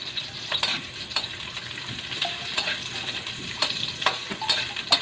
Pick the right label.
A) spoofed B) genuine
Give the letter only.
A